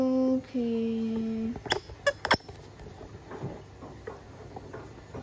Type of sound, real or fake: real